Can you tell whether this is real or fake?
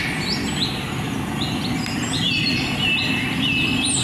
real